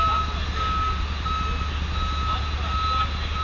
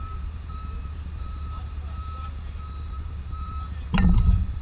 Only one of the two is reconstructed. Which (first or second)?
second